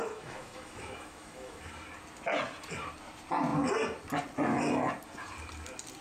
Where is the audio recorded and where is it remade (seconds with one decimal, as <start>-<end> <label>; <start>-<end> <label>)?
0.0-1.7 remade; 1.7-6.0 recorded